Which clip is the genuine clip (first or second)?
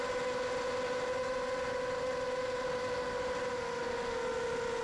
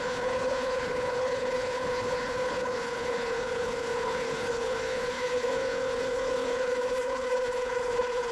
first